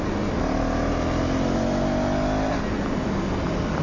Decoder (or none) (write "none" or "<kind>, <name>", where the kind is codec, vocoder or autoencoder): none